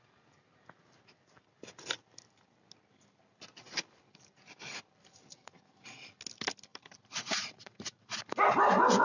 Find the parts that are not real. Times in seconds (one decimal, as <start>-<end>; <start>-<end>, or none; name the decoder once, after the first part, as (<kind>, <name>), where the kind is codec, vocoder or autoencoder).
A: 6.7-8.5 (vocoder, BigVGAN v2)

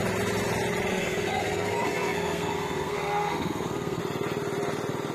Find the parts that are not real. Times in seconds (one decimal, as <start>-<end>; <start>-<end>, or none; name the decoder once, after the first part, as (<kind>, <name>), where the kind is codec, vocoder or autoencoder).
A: 0.9-4.0 (codec, SNAC)

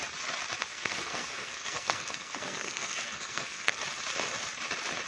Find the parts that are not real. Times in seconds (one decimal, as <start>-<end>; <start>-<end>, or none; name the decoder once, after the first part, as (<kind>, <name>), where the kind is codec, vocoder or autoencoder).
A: 0.7-3.8 (codec, SNAC)

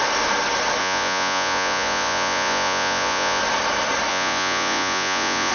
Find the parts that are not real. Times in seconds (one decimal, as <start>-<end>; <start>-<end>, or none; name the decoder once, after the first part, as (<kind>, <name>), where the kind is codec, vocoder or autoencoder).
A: 0.8-3.4 (vocoder, Vocos); 4.1-5.5